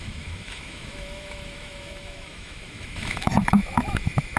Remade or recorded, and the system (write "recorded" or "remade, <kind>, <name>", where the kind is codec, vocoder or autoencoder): remade, autoencoder, DAC-VAE